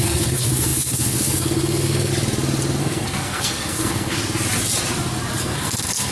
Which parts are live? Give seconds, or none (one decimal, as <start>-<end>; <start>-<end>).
2.1-2.8; 4.2-5.4